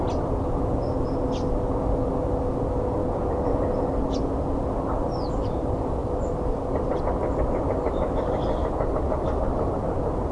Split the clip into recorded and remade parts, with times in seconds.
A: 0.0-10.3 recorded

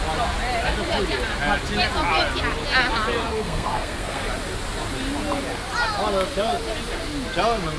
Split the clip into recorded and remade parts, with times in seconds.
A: 0.0-3.3 recorded; 3.3-4.2 remade; 4.2-7.8 recorded

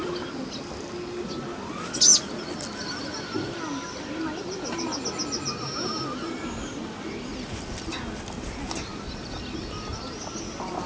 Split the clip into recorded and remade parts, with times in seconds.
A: 0.0-10.9 recorded

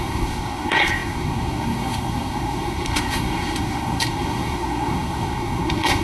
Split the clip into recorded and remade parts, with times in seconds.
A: 0.0-6.0 remade

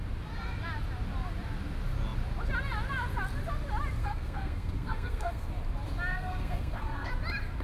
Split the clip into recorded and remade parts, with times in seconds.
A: 0.0-4.0 recorded; 4.0-5.5 remade; 5.5-6.1 recorded; 6.1-7.1 remade; 7.1-7.6 recorded

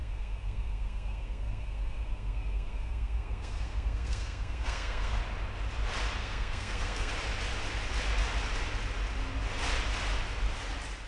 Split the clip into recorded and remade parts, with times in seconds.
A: 0.0-5.2 remade; 5.2-6.2 recorded; 6.2-7.1 remade; 7.1-11.1 recorded

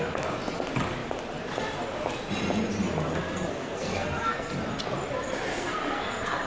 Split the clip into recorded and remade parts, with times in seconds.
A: 0.0-3.2 recorded; 3.2-4.5 remade; 4.5-5.5 recorded; 5.5-6.5 remade

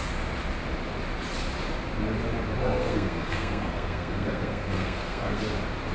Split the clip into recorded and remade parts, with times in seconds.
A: 0.0-2.6 recorded; 2.6-5.4 remade; 5.4-5.9 recorded